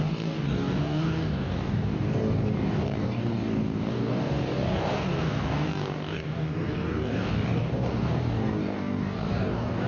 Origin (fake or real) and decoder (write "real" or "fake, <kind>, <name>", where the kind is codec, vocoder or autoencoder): fake, codec, DAC